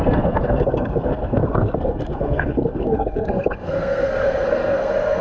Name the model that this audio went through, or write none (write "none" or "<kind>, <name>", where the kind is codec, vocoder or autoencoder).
codec, SNAC